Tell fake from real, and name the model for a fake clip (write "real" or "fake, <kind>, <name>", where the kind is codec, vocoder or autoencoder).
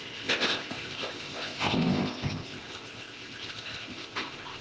fake, codec, ZipCodec